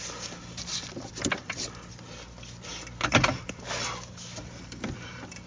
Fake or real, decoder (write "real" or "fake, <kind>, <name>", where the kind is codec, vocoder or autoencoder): real